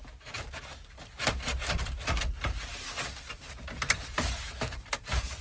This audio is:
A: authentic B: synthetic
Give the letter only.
B